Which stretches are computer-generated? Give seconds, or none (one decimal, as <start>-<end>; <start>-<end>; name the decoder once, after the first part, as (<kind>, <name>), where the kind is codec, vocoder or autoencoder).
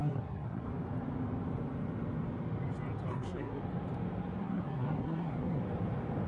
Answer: 0.0-0.7 (codec, SNAC); 3.1-3.6; 4.4-5.6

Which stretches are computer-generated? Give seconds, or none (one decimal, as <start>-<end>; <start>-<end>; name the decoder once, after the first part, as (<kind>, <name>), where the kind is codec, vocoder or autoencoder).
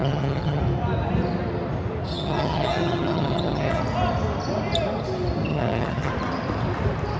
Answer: 0.0-0.6 (vocoder, HiFi-GAN); 2.1-3.8; 5.5-6.1